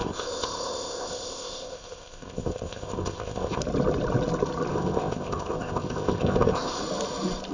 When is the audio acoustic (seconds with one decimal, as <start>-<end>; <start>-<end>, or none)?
3.6-4.7; 6.8-7.5